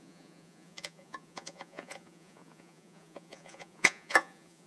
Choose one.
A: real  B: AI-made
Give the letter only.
B